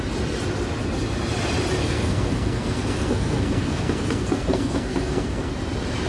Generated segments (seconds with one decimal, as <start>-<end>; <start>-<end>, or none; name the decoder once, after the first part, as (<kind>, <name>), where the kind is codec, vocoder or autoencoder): 1.8-5.5 (codec, SNAC)